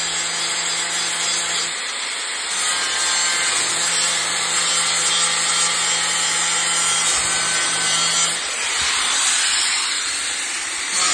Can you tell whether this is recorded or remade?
recorded